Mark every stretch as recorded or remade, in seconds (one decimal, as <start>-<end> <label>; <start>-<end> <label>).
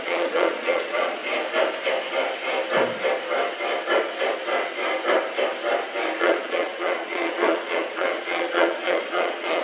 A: 0.0-1.2 remade; 1.2-6.2 recorded; 6.2-9.6 remade